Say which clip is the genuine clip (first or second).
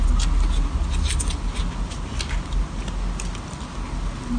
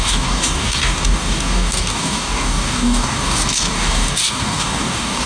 first